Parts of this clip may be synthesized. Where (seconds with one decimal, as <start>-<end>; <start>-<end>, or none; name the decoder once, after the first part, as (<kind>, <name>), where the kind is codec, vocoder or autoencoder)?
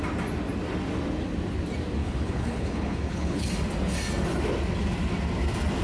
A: 2.0-3.5 (codec, HILCodec)